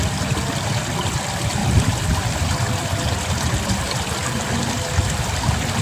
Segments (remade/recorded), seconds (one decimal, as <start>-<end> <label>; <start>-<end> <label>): 0.0-5.8 recorded